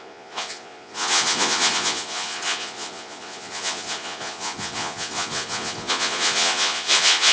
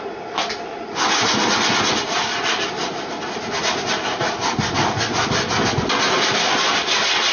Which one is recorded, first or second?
second